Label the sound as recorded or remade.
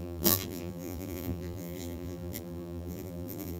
remade